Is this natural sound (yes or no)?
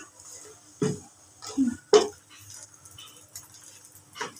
yes